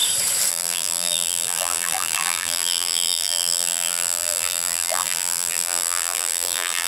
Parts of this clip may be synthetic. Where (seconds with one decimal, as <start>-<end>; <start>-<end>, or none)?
0.5-6.9